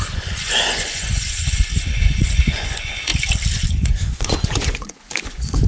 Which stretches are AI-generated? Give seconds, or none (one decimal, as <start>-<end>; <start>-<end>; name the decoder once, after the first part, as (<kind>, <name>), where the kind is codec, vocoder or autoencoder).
0.0-3.1 (vocoder, Vocos); 3.7-5.7